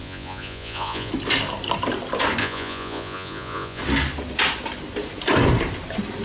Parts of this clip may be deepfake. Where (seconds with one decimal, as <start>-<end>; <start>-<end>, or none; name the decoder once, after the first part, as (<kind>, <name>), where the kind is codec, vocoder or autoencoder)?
0.0-1.1 (vocoder, Vocos); 2.4-3.8